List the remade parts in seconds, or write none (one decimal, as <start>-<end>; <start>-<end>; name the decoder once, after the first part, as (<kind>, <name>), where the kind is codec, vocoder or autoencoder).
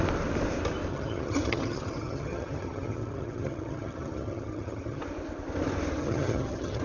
0.9-5.0 (vocoder, HiFi-GAN); 6.0-6.8